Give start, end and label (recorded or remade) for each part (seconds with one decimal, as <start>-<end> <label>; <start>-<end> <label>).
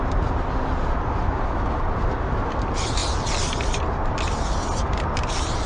0.0-5.7 recorded